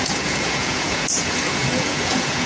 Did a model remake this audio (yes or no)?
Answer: yes